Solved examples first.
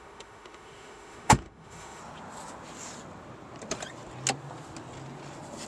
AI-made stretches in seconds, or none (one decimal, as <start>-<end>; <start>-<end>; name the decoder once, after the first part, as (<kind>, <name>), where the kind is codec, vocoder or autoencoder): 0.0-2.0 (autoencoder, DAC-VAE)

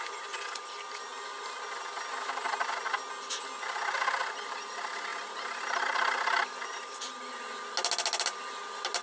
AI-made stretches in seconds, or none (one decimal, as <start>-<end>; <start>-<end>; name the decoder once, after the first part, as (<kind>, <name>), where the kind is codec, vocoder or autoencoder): none

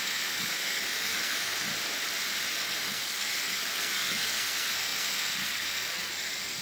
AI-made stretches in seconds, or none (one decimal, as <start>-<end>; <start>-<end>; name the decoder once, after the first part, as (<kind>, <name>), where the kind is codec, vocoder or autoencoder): 0.0-1.7 (codec, SNAC); 2.5-6.6

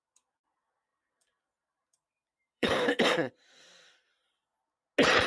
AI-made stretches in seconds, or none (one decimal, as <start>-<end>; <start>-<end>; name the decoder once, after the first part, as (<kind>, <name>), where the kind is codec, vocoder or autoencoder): 0.9-3.3 (vocoder, BigVGAN v2)

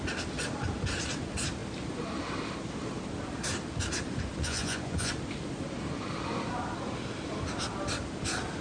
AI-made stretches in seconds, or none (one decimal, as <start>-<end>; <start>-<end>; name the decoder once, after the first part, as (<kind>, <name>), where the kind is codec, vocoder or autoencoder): 4.4-5.1 (vocoder, Vocos)

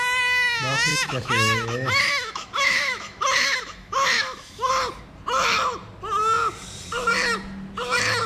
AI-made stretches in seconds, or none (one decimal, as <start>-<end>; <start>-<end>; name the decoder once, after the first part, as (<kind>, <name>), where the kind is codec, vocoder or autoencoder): 0.9-4.7 (autoencoder, DAC-VAE)

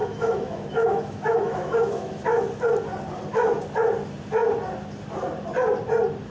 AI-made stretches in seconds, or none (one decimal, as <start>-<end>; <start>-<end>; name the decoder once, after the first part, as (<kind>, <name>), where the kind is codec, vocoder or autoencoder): 0.0-2.4 (autoencoder, DAC-VAE)